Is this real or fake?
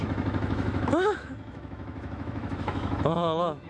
fake